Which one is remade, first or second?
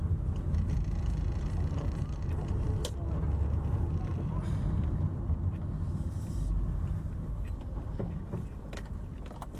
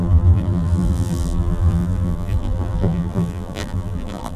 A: second